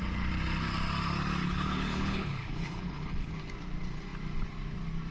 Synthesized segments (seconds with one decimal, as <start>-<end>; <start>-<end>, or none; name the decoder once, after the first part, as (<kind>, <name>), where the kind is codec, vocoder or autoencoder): 1.4-3.3 (codec, HILCodec)